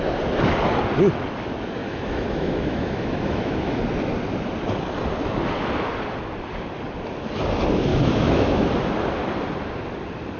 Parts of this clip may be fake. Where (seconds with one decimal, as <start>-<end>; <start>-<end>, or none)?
1.8-3.8; 7.9-8.7